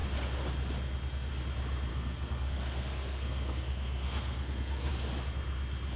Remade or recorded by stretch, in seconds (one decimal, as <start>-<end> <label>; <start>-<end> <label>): 0.0-1.9 recorded; 1.9-4.9 remade; 4.9-6.0 recorded